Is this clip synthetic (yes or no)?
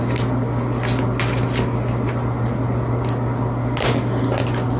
no